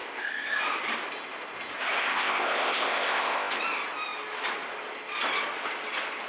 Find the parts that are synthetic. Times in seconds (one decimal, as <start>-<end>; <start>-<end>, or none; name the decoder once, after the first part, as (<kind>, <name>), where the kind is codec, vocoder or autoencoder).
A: 0.0-0.6 (codec, ZipCodec); 2.0-3.6

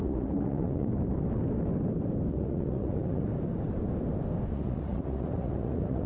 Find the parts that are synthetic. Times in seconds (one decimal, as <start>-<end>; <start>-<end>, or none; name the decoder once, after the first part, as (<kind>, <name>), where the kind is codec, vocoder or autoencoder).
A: 0.0-0.9 (vocoder, Vocos); 2.3-3.3; 4.5-6.1

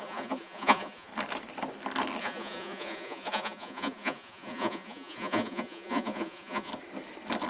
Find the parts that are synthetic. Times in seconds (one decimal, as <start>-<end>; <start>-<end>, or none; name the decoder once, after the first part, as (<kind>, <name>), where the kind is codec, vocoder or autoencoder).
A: 0.0-1.1 (vocoder, Vocos); 2.2-6.7

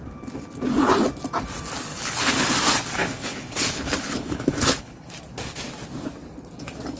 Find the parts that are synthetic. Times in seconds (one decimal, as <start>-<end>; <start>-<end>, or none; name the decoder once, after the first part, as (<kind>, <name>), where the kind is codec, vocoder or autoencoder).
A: 1.9-2.5 (codec, HILCodec); 3.0-5.1

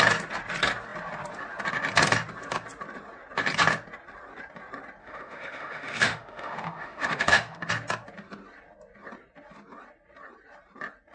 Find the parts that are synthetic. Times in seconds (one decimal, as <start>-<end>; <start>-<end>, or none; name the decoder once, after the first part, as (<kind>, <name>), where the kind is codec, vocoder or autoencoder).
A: 5.0-7.7 (autoencoder, DAC-VAE)